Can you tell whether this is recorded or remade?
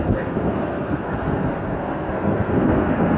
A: remade